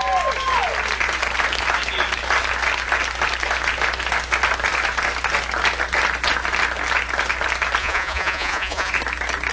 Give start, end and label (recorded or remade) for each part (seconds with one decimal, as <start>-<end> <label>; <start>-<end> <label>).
0.0-7.8 recorded; 7.8-8.9 remade; 8.9-9.5 recorded